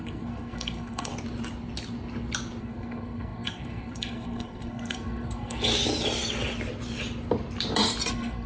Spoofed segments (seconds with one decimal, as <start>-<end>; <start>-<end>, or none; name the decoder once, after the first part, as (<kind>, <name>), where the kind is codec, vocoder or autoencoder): 0.0-1.1 (codec, SNAC); 2.6-5.7; 8.1-8.5